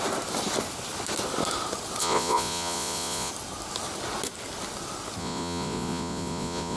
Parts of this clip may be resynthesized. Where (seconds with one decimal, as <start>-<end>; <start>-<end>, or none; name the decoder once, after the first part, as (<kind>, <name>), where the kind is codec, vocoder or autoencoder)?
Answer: 2.0-3.3 (vocoder, Vocos); 5.2-6.8